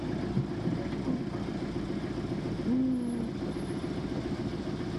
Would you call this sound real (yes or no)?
yes